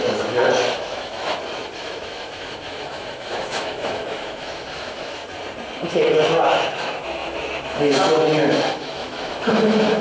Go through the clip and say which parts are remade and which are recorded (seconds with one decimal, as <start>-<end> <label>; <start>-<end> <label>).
0.0-5.2 remade; 5.2-5.8 recorded; 5.8-10.0 remade